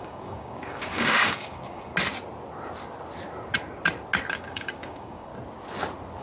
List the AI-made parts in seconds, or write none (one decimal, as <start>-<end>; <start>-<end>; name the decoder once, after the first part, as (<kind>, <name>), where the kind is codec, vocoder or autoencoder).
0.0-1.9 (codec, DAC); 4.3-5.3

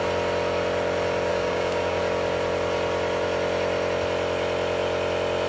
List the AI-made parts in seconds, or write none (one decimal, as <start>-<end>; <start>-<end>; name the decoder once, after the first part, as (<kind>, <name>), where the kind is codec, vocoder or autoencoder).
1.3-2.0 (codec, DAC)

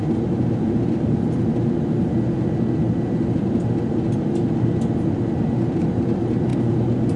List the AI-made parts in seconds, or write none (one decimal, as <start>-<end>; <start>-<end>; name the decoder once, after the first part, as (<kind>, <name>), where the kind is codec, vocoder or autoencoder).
none